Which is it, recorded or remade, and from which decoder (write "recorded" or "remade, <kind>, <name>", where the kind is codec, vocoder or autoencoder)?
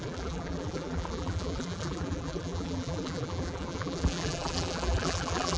remade, vocoder, BigVGAN v2